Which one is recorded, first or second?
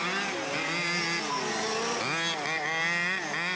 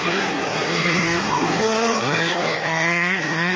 first